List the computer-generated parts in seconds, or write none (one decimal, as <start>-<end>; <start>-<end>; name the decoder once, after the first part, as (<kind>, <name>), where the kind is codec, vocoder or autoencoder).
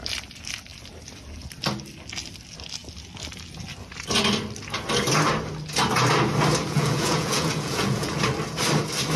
6.6-8.2 (vocoder, Vocos)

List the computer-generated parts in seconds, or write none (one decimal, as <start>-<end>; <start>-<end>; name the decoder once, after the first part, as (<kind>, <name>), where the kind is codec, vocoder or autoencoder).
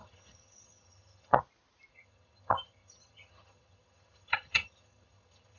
0.0-1.4 (vocoder, HiFi-GAN); 1.9-5.6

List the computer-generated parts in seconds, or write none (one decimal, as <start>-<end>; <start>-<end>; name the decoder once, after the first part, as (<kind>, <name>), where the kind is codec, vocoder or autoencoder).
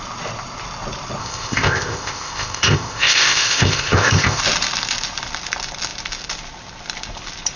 1.2-4.4 (codec, ZipCodec)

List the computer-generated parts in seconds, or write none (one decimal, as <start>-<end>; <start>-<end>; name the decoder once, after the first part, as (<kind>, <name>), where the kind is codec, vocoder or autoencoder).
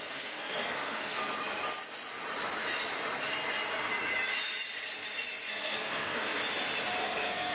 0.0-1.2 (codec, SNAC); 5.5-6.4; 7.0-7.5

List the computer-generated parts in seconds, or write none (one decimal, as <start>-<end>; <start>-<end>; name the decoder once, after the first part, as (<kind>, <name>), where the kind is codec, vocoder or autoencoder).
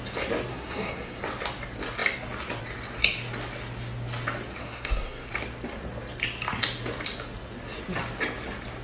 0.5-1.2 (codec, SNAC); 4.6-5.3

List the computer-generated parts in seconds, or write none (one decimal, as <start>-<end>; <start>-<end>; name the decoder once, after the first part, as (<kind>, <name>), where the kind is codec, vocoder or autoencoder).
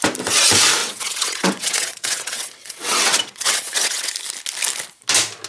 0.8-4.1 (vocoder, WaveNeXt)